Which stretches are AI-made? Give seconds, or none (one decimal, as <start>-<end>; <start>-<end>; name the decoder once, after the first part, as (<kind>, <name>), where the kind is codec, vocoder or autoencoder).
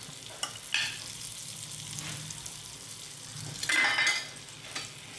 none